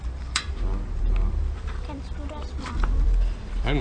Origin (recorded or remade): remade